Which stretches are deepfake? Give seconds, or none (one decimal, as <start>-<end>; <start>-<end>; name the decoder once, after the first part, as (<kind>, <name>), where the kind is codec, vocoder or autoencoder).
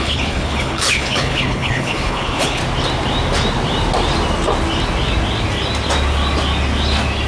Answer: 0.0-2.6 (codec, HILCodec)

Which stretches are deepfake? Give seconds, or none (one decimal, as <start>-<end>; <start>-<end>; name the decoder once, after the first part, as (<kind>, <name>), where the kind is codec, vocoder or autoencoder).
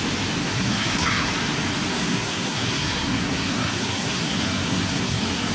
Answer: 0.4-1.3 (codec, SNAC); 1.9-5.5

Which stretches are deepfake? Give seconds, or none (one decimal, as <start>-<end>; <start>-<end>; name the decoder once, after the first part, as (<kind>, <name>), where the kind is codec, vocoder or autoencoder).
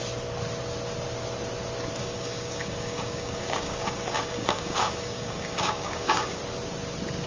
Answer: 2.0-6.4 (codec, DAC)